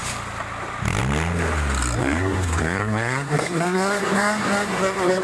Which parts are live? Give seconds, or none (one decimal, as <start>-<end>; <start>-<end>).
0.0-2.0